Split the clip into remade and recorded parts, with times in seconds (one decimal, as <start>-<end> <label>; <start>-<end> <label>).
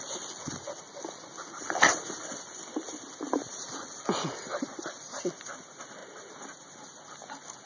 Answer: 0.0-7.7 recorded